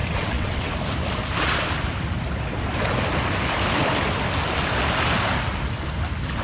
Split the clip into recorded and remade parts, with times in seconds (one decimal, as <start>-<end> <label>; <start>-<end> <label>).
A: 0.0-0.7 remade; 0.7-6.4 recorded